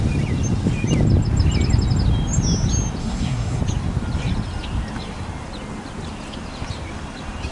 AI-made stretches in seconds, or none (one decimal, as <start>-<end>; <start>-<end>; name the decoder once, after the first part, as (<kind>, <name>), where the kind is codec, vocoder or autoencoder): 3.0-3.6 (codec, SNAC)